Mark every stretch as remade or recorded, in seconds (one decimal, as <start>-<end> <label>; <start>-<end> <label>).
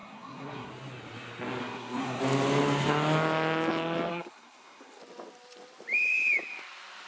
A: 0.0-0.7 remade; 0.7-1.6 recorded; 1.6-2.2 remade; 2.2-4.1 recorded; 4.1-5.0 remade; 5.0-7.1 recorded